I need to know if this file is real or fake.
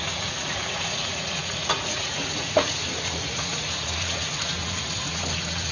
fake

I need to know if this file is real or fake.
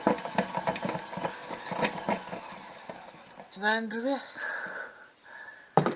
real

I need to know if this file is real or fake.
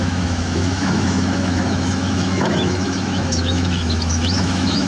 fake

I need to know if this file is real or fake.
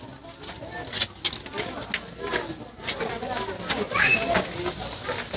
real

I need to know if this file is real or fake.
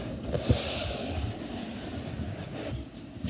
real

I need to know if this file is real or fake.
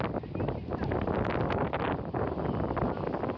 real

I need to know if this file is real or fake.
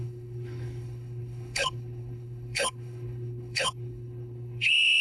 fake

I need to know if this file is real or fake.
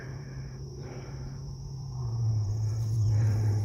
fake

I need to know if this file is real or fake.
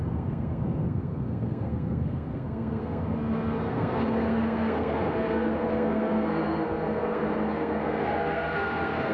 fake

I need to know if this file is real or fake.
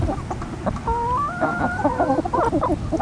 real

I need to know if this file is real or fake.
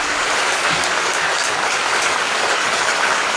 fake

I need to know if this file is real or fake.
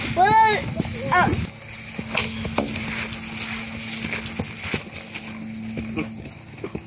real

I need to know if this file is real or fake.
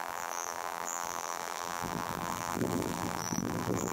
fake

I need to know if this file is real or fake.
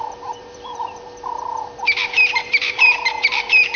fake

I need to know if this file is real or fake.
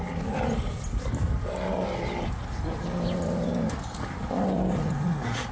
real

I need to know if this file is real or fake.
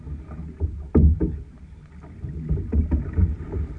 real